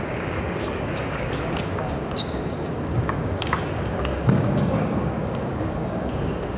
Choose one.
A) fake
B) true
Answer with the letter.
A